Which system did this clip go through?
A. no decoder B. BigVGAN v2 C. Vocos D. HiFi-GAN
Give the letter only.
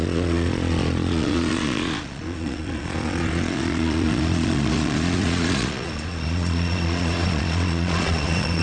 C